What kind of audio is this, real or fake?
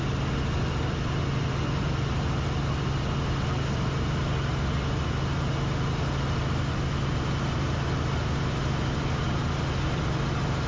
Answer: real